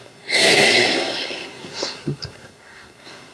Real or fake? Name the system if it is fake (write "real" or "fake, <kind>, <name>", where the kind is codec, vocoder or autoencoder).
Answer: fake, codec, SNAC